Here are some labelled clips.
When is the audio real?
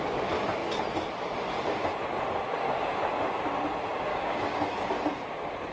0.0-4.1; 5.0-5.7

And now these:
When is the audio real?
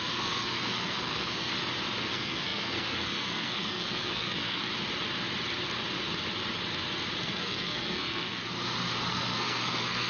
1.5-2.0; 4.7-7.2; 8.4-9.1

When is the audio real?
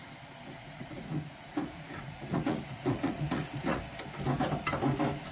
0.0-0.6; 3.8-5.3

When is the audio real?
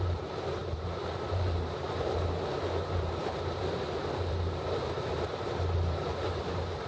none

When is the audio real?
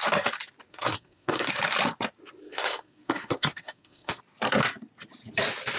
0.0-0.7; 1.5-2.4; 4.2-5.8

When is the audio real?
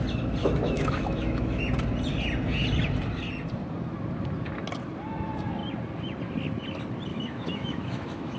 0.0-0.4; 1.6-7.1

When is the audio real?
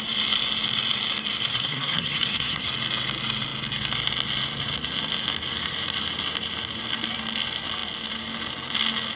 0.0-1.5; 2.7-9.2